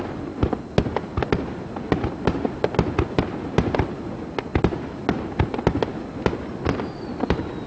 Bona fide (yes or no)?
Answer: yes